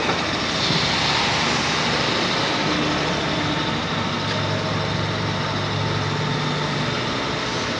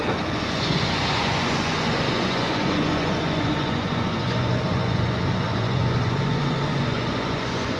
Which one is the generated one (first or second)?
second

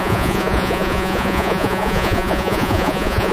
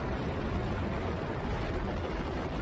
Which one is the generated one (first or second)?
first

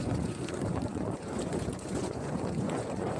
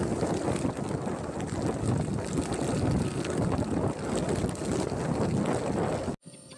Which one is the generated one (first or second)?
first